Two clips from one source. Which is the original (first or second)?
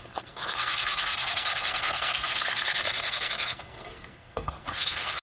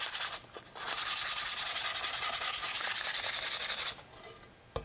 second